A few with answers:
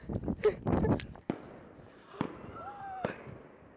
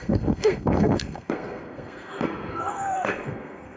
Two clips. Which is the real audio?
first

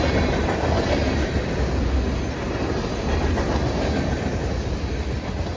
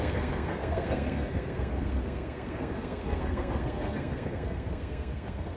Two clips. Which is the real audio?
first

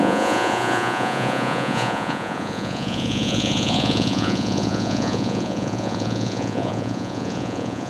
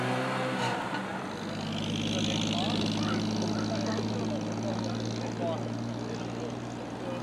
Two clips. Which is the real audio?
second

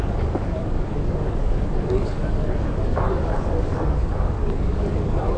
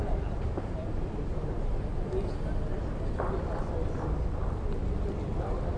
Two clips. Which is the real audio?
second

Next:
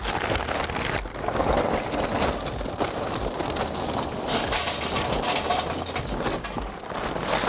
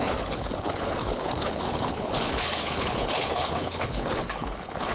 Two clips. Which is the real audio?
first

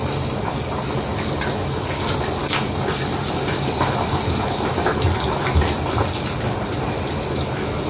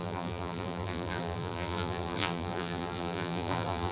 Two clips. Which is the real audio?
first